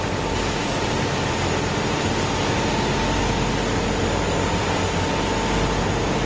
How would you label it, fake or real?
real